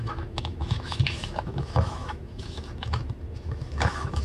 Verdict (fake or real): fake